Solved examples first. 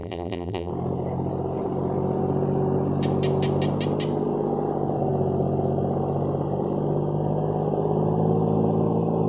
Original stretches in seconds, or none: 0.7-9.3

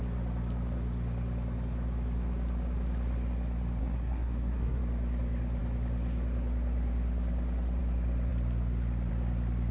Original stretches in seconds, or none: 0.0-3.8; 4.8-9.7

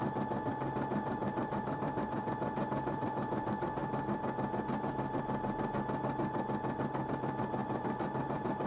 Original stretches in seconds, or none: 0.0-1.2; 2.3-7.6